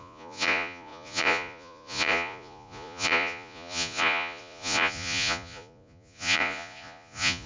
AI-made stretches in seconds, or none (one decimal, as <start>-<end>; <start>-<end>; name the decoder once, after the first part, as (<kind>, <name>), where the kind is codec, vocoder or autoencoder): 0.0-7.5 (vocoder, Vocos)